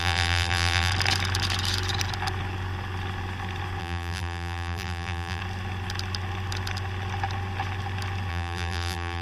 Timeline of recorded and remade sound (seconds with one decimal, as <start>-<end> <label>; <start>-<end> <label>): 0.0-0.9 remade; 0.9-3.8 recorded; 3.8-5.4 remade; 5.4-8.3 recorded; 8.3-9.2 remade